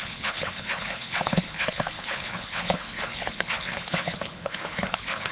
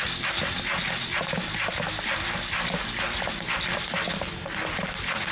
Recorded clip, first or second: second